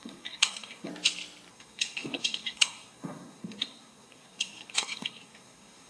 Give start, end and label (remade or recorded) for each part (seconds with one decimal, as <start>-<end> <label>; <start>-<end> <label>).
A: 0.0-0.9 remade; 0.9-1.5 recorded; 1.5-5.9 remade